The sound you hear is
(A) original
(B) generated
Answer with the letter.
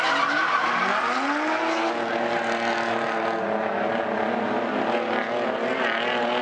A